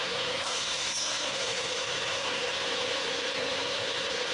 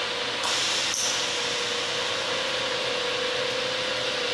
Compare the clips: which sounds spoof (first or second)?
first